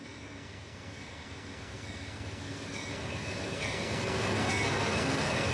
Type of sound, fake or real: fake